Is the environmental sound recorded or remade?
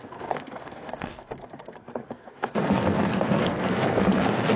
remade